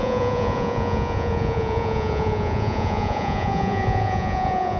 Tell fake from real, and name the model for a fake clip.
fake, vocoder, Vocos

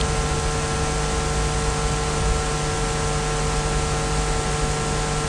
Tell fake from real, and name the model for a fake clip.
real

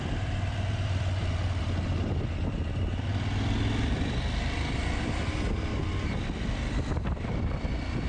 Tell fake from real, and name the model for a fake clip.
fake, vocoder, BigVGAN v2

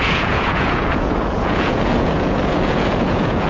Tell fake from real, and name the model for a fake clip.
fake, vocoder, Vocos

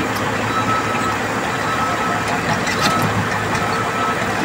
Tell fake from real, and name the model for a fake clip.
real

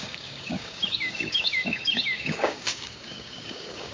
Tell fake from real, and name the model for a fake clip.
fake, codec, DAC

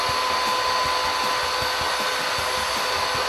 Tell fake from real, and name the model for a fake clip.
real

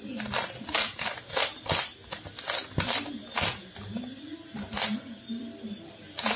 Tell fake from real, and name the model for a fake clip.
real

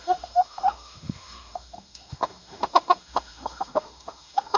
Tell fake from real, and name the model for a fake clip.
fake, autoencoder, DAC-VAE